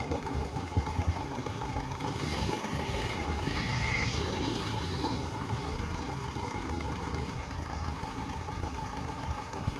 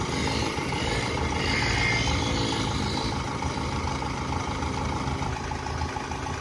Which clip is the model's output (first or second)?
first